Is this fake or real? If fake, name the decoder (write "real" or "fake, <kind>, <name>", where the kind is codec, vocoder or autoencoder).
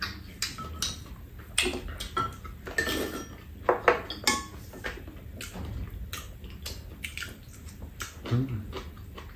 real